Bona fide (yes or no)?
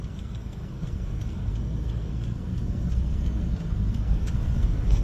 no